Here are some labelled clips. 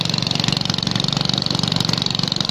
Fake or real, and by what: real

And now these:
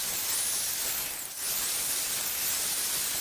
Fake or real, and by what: real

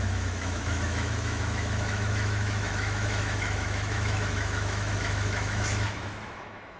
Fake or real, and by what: fake, autoencoder, DAC-VAE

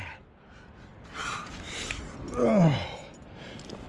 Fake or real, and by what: real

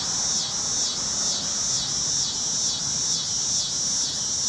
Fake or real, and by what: real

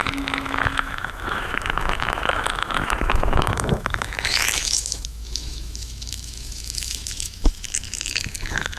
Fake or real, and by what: fake, autoencoder, DAC-VAE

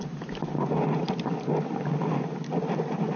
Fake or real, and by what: real